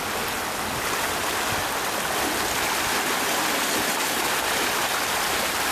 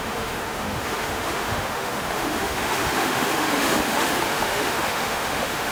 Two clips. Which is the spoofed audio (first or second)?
second